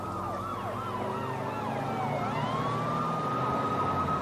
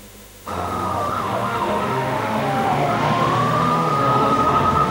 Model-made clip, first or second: second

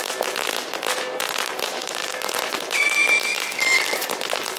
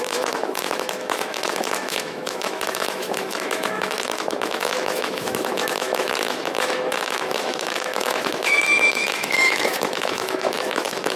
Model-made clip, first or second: second